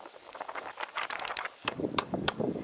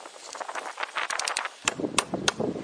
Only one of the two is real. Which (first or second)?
second